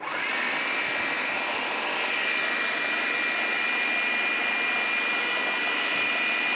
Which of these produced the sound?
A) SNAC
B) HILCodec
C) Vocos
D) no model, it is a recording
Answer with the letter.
D